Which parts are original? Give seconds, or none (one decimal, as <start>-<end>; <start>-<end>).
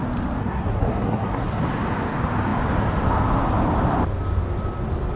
0.0-0.4; 1.6-5.2